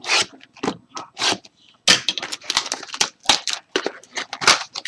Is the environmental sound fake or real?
real